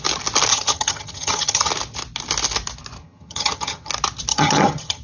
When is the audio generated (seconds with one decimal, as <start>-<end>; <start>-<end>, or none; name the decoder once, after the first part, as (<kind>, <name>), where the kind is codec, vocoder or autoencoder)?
0.5-1.7 (vocoder, HiFi-GAN); 3.0-3.9; 4.3-5.0